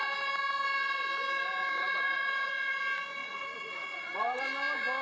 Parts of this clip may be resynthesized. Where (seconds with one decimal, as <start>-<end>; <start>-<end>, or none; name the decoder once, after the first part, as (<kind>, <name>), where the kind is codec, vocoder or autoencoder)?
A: 1.8-2.8 (vocoder, Vocos); 3.2-4.4